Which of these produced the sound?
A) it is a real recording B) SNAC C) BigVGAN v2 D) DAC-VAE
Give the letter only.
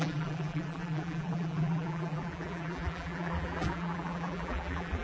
C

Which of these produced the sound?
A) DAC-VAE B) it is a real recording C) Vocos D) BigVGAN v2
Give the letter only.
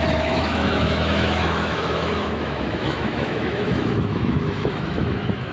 A